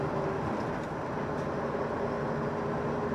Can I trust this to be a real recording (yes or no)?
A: yes